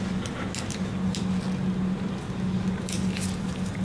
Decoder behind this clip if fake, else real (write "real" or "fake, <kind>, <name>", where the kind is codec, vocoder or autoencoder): real